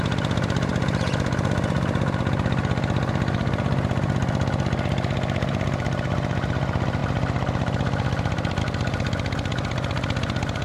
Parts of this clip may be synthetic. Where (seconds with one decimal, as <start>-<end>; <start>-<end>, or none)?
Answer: none